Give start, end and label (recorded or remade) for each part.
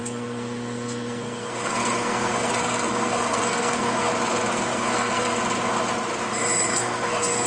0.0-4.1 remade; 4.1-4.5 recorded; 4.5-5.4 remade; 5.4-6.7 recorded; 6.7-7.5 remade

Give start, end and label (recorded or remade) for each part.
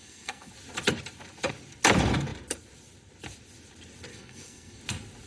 0.0-0.5 remade; 0.5-4.1 recorded; 4.1-4.8 remade; 4.8-5.3 recorded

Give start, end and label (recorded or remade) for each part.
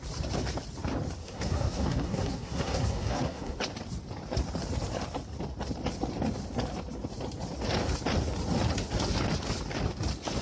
0.0-1.2 recorded; 1.2-3.6 remade; 3.6-10.4 recorded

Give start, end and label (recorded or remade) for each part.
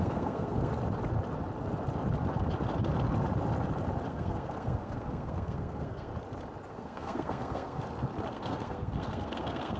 0.0-0.7 remade; 0.7-4.1 recorded; 4.1-6.1 remade; 6.1-6.7 recorded; 6.7-7.8 remade; 7.8-8.3 recorded; 8.3-9.8 remade